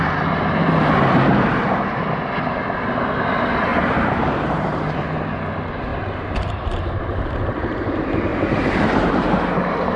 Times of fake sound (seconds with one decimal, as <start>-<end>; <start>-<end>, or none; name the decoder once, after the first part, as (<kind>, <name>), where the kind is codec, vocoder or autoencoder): 3.7-5.0 (vocoder, BigVGAN v2); 5.9-7.9; 8.3-10.0